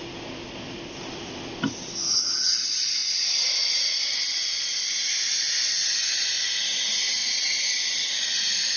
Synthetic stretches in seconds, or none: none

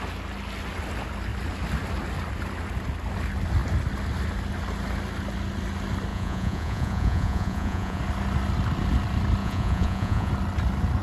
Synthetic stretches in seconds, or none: 6.1-8.0 (vocoder, Vocos); 9.4-10.3

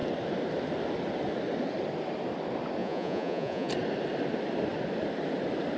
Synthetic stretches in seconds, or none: 2.8-3.7 (vocoder, Vocos)

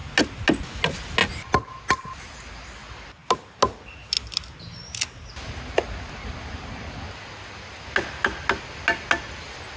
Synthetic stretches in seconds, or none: none